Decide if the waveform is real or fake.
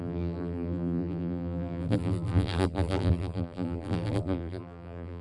fake